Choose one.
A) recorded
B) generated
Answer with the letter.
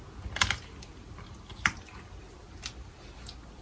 A